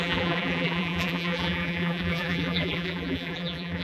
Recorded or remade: remade